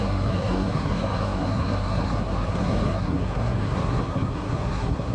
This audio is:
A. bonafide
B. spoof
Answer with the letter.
B